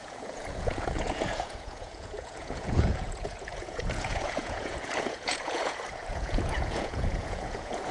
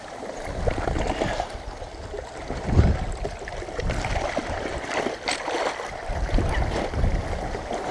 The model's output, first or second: first